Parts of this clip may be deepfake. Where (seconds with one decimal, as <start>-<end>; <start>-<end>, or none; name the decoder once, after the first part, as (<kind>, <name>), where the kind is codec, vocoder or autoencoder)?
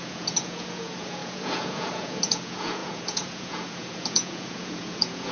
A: 0.0-5.3 (vocoder, Vocos)